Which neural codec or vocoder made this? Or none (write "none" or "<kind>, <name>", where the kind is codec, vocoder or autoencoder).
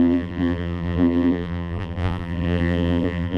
vocoder, BigVGAN v2